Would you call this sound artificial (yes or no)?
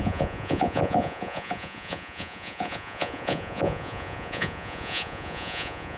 yes